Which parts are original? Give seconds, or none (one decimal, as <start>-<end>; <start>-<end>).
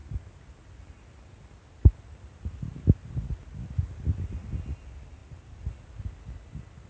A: 0.0-6.9